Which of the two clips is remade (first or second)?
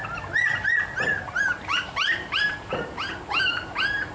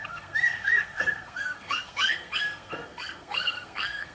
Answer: second